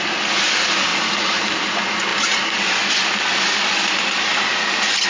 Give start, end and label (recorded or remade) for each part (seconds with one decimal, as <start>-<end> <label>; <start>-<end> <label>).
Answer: 0.0-5.1 recorded